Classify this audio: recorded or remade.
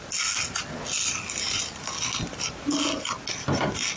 recorded